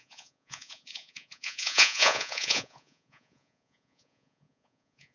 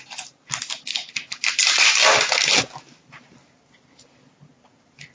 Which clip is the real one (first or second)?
second